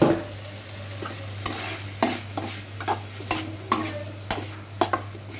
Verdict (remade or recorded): recorded